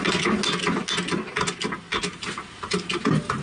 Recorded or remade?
recorded